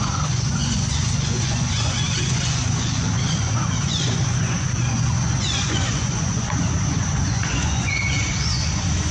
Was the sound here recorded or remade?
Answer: remade